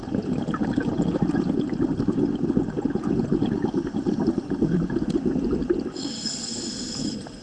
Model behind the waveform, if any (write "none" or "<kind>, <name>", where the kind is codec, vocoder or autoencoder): none